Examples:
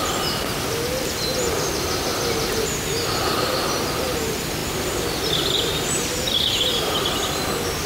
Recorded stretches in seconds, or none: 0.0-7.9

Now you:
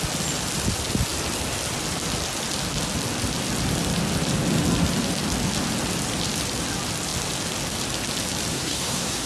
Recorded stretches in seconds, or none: 0.0-8.5

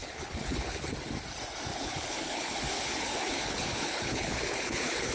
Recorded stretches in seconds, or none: 0.9-1.7

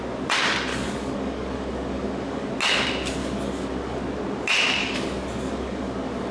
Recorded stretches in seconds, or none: 0.0-0.7; 2.5-3.2; 4.0-4.8